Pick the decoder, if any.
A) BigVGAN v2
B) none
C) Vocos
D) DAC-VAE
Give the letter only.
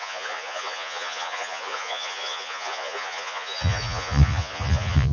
C